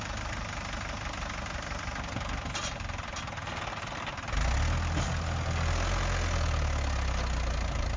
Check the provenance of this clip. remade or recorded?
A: recorded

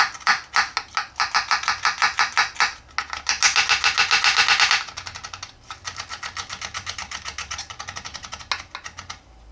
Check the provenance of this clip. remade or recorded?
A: recorded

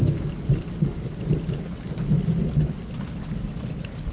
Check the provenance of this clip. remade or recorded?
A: recorded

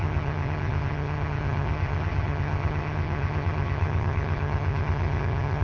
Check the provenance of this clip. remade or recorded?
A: remade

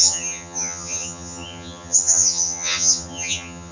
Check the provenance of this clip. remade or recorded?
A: remade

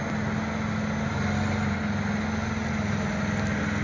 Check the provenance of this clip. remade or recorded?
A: recorded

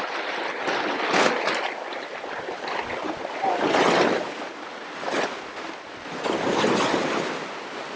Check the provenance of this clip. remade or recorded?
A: recorded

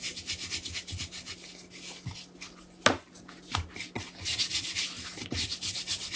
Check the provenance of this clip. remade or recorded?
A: recorded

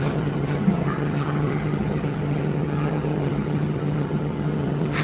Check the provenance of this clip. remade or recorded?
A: remade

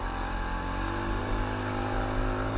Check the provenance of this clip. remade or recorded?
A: recorded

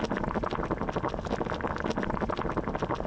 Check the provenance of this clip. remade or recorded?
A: recorded